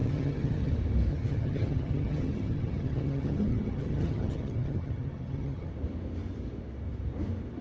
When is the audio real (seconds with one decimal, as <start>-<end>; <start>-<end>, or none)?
0.7-1.1; 5.7-7.6